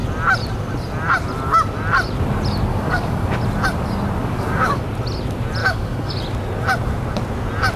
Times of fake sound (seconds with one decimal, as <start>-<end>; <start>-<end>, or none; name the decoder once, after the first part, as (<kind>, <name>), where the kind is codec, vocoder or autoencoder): 2.7-3.3 (codec, DAC); 4.2-4.8; 5.6-6.1